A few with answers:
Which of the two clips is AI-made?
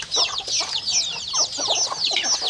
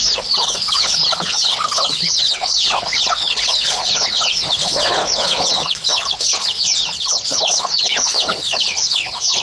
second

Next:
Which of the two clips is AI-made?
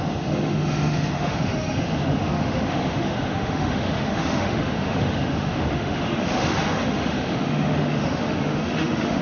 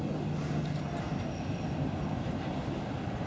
first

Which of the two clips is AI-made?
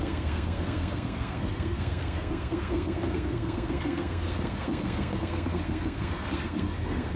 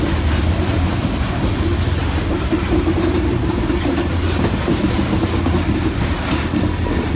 first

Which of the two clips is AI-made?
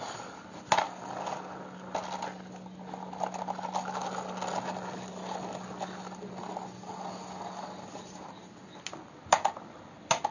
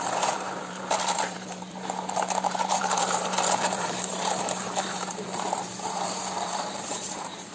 second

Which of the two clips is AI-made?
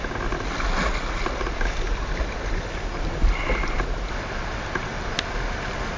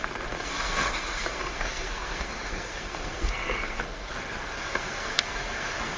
second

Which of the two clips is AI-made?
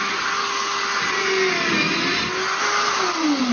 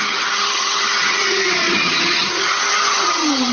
second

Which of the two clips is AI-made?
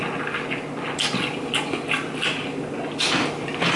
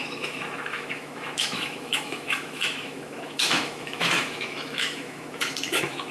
second